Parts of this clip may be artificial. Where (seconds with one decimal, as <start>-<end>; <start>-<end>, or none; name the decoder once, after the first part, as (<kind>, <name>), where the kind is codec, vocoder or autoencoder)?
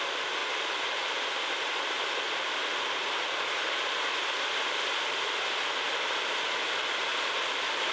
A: 0.4-5.1 (vocoder, BigVGAN v2)